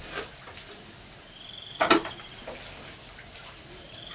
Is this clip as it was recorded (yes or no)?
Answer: yes